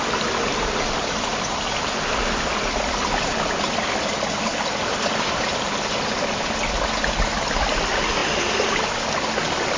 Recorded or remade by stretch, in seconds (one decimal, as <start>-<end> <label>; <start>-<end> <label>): 0.0-9.8 recorded